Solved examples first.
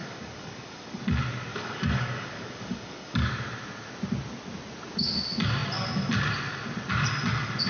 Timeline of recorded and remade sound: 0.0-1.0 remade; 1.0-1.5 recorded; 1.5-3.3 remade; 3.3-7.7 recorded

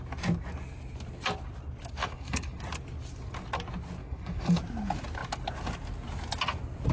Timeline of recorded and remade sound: 0.0-2.0 recorded; 2.0-2.6 remade; 2.6-4.0 recorded; 4.0-4.6 remade; 4.6-6.9 recorded

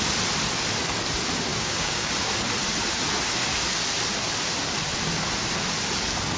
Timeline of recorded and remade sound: 0.0-1.5 recorded; 1.5-2.1 remade; 2.1-6.4 recorded

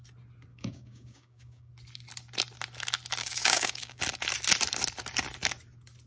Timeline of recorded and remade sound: 0.0-0.5 recorded; 0.5-1.7 remade; 1.7-3.2 recorded; 3.2-4.0 remade; 4.0-6.1 recorded

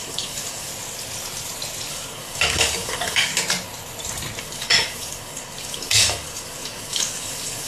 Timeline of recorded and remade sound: 0.0-0.7 remade; 0.7-1.9 recorded; 1.9-3.3 remade; 3.3-4.4 recorded; 4.4-7.7 remade

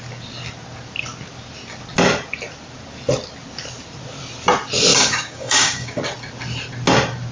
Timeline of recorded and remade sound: 0.0-4.9 recorded; 4.9-6.0 remade; 6.0-7.3 recorded

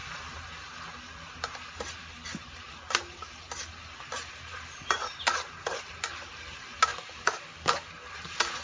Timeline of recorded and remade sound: 0.0-6.9 recorded; 6.9-7.9 remade; 7.9-8.6 recorded